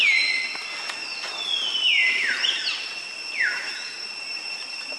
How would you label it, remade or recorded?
recorded